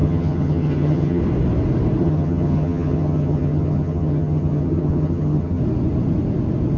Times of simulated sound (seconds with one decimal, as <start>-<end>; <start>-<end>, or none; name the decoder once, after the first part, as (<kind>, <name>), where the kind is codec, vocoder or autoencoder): 0.0-1.2 (vocoder, HiFi-GAN); 2.0-5.6